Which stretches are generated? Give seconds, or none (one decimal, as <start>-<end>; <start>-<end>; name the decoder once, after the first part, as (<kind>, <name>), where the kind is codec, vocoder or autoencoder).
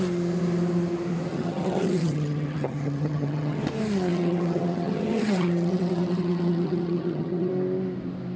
1.3-3.6 (vocoder, HiFi-GAN); 4.1-7.5